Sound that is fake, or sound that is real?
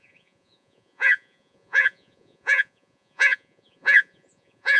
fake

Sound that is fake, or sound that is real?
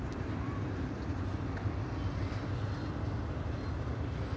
real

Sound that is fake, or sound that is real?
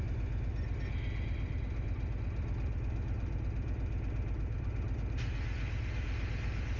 real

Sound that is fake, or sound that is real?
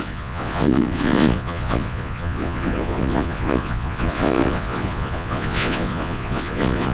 fake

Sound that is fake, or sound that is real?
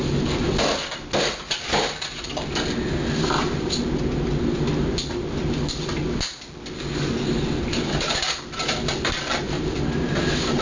real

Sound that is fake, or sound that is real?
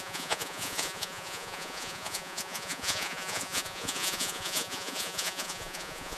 fake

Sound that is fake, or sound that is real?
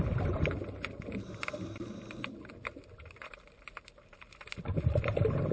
real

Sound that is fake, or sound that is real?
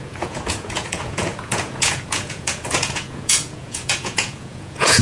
fake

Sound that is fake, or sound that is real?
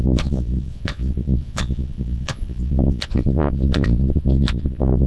fake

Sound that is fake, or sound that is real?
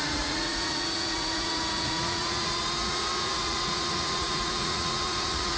fake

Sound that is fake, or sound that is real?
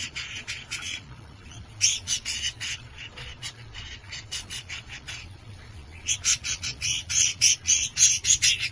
fake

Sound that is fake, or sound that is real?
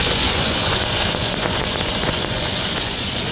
fake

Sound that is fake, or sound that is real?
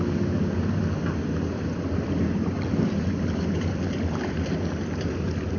real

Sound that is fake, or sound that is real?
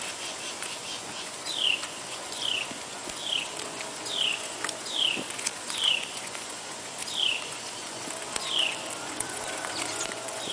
fake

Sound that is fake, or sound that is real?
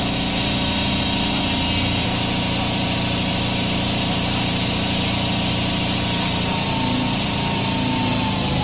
real